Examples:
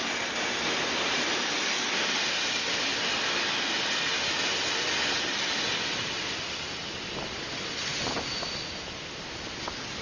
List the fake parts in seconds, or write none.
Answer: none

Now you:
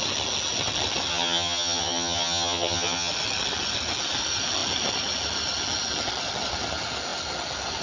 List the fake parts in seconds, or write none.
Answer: 1.1-3.1 (vocoder, HiFi-GAN)

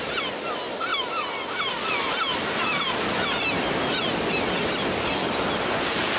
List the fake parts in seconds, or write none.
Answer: none